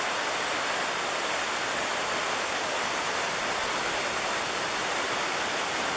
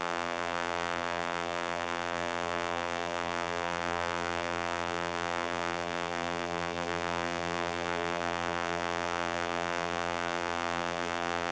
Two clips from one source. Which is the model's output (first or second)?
second